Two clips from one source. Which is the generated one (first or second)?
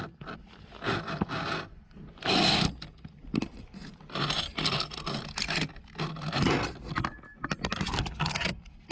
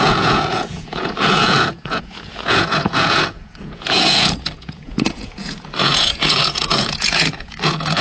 second